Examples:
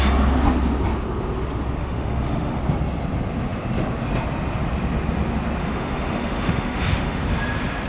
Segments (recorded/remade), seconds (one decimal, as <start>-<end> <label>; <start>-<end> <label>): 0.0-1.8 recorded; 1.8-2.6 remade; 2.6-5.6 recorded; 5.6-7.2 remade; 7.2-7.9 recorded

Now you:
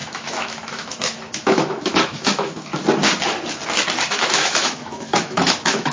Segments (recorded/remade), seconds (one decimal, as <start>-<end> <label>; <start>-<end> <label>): 0.0-2.7 remade; 2.7-4.1 recorded; 4.1-5.9 remade

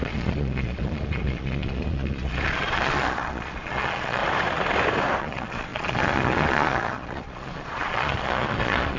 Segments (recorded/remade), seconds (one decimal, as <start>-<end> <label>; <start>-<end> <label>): 0.0-4.2 remade; 4.2-5.2 recorded; 5.2-9.0 remade

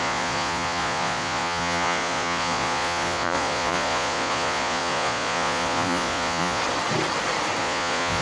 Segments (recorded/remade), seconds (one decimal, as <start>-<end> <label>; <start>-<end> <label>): 0.0-6.6 remade; 6.6-7.6 recorded; 7.6-8.2 remade

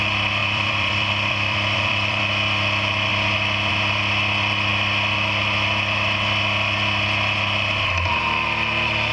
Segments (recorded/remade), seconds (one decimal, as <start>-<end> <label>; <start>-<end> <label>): 0.0-0.4 recorded; 0.4-2.2 remade; 2.2-9.1 recorded

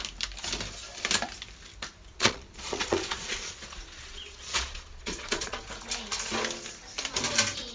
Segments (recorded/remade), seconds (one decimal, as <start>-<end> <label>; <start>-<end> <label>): 0.0-2.1 recorded; 2.1-5.6 remade; 5.6-7.7 recorded